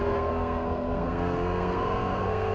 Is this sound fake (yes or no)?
yes